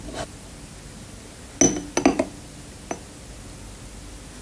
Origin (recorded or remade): recorded